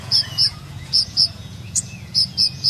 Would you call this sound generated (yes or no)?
yes